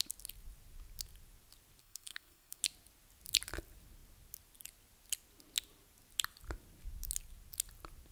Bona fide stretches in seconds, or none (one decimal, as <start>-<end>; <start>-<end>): 0.0-1.8; 2.6-8.1